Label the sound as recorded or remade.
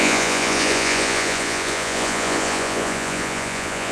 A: remade